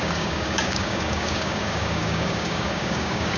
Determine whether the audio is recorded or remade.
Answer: remade